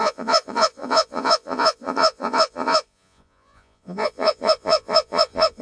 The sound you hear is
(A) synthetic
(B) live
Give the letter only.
A